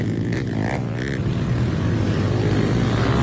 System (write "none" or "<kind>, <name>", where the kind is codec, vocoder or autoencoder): none